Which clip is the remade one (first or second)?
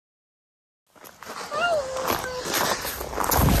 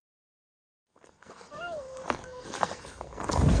second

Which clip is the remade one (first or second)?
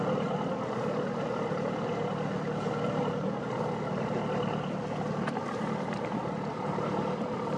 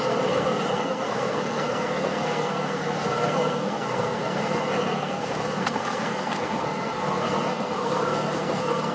second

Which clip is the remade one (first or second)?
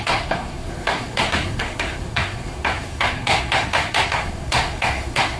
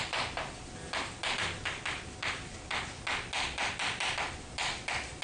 first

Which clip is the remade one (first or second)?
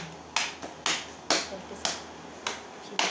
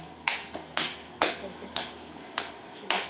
second